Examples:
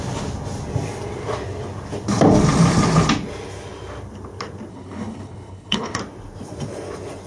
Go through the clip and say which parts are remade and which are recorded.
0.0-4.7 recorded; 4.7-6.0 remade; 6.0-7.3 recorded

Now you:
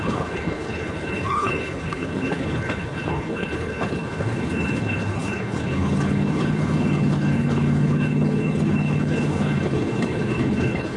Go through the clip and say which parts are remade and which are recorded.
0.0-11.0 remade

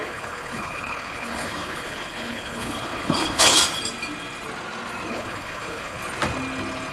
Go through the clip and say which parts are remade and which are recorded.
0.0-3.6 remade; 3.6-5.1 recorded; 5.1-6.0 remade; 6.0-6.9 recorded

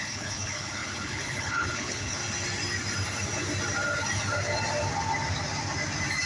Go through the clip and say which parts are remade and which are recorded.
0.0-2.2 remade; 2.2-6.3 recorded